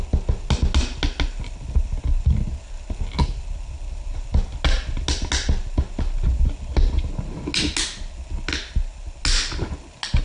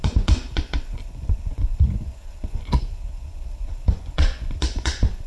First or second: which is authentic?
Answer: first